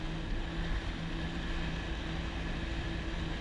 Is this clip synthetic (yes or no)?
no